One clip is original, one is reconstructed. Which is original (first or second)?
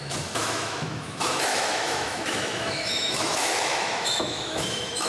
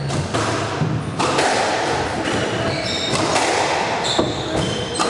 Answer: second